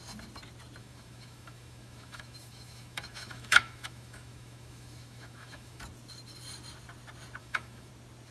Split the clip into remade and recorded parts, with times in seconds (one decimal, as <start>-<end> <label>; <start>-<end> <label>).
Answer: 0.0-0.8 recorded; 0.8-5.8 remade; 5.8-7.4 recorded; 7.4-7.9 remade; 7.9-8.3 recorded